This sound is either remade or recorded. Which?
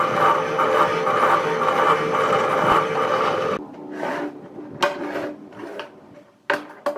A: recorded